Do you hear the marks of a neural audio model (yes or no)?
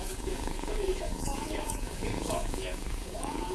yes